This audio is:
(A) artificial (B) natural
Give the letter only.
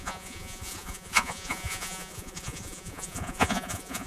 A